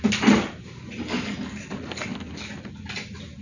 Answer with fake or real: real